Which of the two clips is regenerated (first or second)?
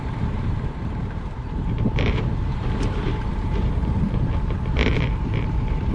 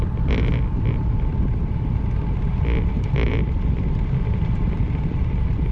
first